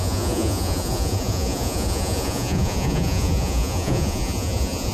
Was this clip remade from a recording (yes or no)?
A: yes